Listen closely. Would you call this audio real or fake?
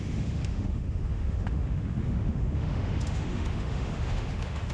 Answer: fake